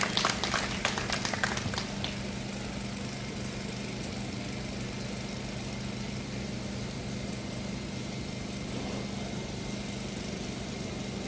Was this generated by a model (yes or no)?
no